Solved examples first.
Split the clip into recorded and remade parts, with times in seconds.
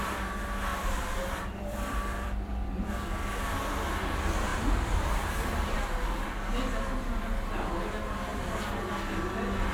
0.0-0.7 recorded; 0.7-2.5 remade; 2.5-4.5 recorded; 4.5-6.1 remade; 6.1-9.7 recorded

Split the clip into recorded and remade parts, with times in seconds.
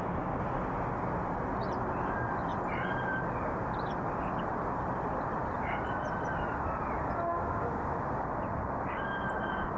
0.0-2.5 recorded; 2.5-3.6 remade; 3.6-9.8 recorded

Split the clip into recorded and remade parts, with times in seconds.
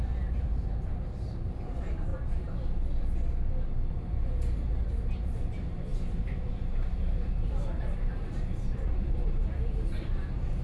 0.0-2.1 remade; 2.1-3.9 recorded; 3.9-10.6 remade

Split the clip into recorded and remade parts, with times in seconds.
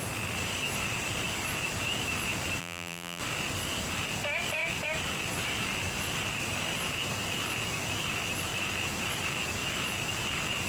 0.0-2.6 recorded; 2.6-3.2 remade; 3.2-10.7 recorded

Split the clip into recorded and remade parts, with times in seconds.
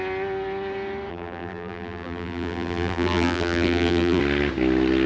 0.0-1.1 recorded; 1.1-4.2 remade; 4.2-5.1 recorded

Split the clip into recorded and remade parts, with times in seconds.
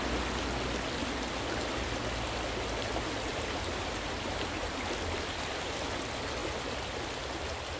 0.0-3.3 recorded; 3.3-4.7 remade; 4.7-7.8 recorded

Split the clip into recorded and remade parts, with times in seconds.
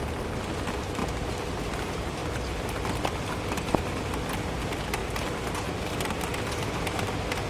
0.0-7.5 recorded